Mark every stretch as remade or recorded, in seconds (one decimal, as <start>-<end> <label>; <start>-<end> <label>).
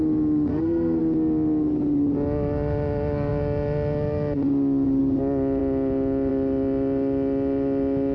0.0-0.5 recorded; 0.5-1.0 remade; 1.0-8.1 recorded